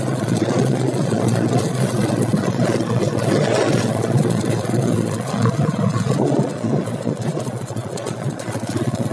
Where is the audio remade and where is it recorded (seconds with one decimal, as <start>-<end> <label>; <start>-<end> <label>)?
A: 0.0-9.1 remade